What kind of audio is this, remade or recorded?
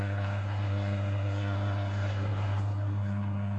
remade